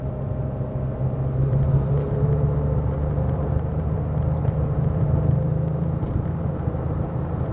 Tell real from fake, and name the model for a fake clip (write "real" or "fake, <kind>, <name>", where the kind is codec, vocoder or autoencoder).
fake, vocoder, BigVGAN v2